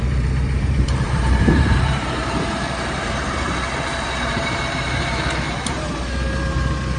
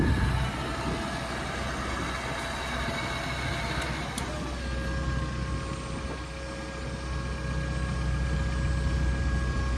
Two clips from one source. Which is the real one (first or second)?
second